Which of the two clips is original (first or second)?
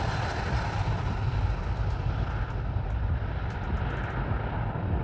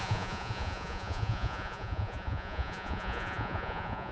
first